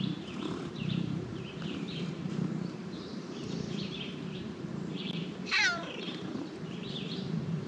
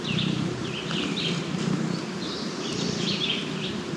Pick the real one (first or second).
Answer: second